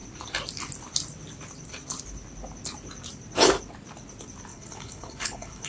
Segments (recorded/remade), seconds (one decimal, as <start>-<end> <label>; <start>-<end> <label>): 0.0-4.5 recorded; 4.5-5.7 remade